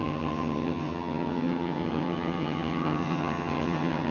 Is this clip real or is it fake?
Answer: fake